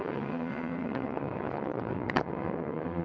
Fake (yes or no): yes